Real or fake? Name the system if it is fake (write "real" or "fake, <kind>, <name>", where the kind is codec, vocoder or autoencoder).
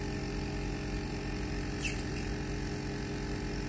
real